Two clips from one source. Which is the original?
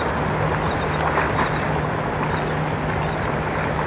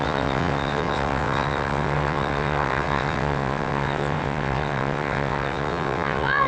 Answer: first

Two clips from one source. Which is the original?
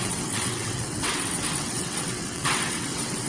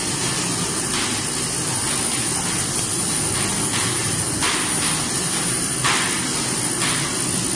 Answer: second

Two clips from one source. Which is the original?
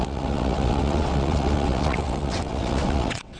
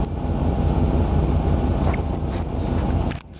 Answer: second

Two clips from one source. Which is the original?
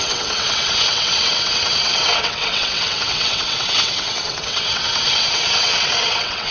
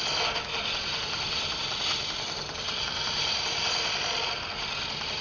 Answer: second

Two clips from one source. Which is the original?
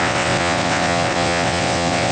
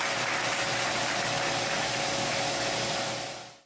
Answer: second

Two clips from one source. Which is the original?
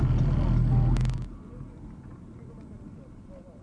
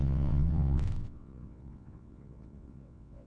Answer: first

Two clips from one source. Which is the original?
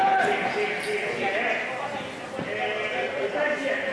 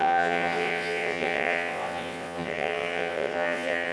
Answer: first